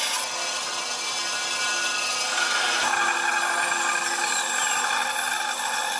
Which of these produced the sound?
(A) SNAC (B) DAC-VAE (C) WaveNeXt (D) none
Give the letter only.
D